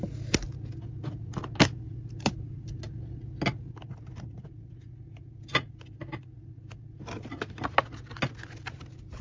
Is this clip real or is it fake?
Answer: real